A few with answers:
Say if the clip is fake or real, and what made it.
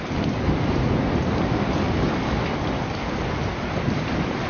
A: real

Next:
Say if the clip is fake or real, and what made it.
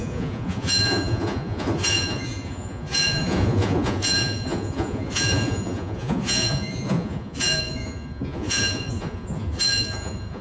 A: fake, vocoder, Vocos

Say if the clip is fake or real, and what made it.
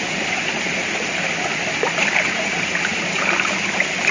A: real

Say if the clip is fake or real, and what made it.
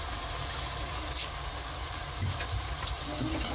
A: real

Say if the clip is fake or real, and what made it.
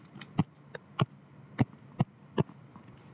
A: real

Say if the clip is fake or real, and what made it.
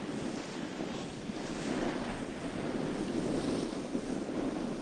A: real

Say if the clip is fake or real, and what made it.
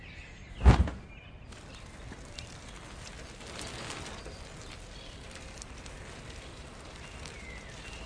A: real